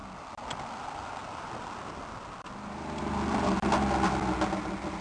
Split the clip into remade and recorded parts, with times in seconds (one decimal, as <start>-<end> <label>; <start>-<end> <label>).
0.0-5.0 recorded